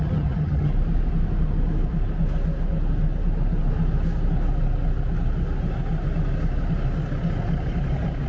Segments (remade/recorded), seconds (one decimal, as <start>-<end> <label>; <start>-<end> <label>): 0.0-0.7 remade; 0.7-8.3 recorded